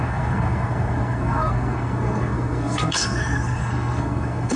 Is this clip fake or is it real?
fake